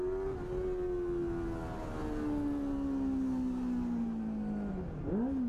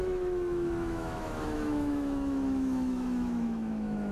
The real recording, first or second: first